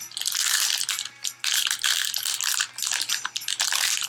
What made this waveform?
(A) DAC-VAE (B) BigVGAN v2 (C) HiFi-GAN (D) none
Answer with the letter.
D